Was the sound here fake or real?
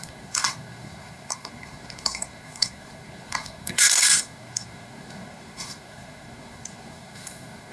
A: fake